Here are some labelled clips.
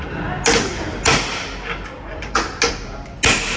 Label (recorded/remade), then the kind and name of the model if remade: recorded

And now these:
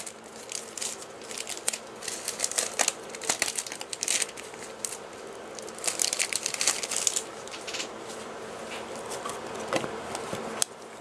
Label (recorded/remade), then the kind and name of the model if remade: recorded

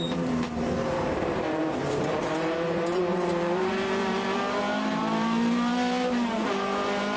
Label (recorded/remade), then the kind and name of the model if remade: remade, vocoder, BigVGAN v2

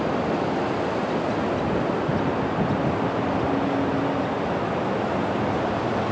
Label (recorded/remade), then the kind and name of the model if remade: recorded